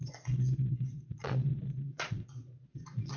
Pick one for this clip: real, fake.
fake